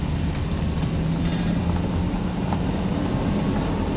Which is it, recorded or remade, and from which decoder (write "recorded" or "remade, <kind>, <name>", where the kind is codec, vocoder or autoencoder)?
recorded